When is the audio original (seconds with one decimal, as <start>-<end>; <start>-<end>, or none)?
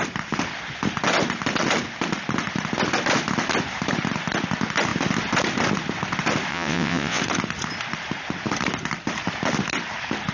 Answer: 0.0-6.5; 7.2-10.3